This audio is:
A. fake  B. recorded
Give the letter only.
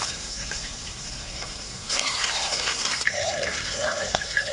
A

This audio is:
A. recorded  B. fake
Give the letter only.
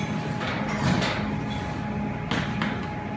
A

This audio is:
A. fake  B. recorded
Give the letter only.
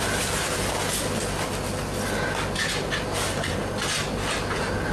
B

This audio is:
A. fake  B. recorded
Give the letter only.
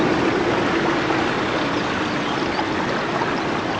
B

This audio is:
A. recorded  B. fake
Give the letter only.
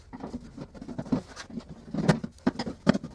A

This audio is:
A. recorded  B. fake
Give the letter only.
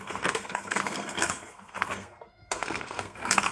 B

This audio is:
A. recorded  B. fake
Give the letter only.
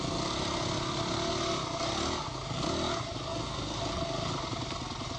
A